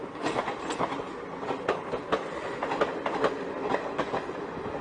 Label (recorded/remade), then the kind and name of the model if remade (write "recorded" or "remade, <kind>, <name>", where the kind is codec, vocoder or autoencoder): recorded